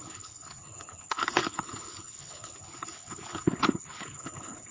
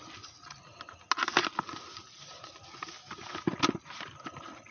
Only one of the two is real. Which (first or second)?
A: second